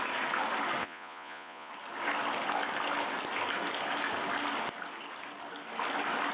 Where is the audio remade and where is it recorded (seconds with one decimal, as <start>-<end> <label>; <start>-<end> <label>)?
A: 0.0-0.8 recorded; 0.8-1.7 remade; 1.7-6.3 recorded